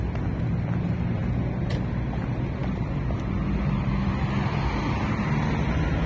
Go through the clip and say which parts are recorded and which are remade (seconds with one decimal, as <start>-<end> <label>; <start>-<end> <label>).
0.0-6.1 recorded